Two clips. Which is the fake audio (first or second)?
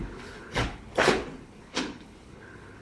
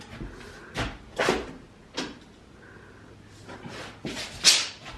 first